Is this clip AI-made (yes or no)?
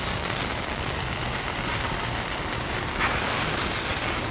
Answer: no